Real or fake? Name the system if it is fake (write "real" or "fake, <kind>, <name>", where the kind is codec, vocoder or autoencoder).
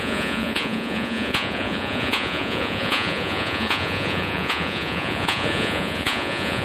fake, vocoder, Vocos